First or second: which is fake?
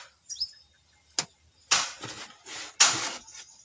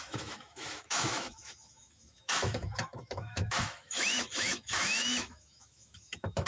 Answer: second